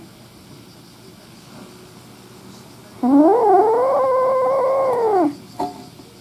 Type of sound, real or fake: real